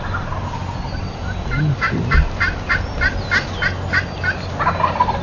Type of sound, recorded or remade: recorded